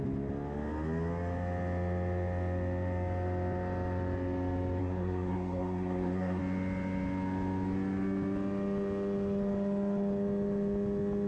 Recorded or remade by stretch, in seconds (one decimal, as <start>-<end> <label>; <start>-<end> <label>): 0.0-4.8 recorded; 4.8-6.4 remade; 6.4-11.3 recorded